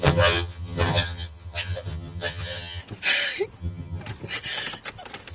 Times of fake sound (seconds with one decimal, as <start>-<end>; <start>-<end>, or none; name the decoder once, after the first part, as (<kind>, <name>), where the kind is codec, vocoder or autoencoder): 0.0-2.8 (vocoder, HiFi-GAN); 3.6-4.0